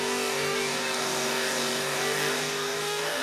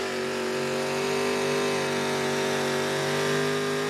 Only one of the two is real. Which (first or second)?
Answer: second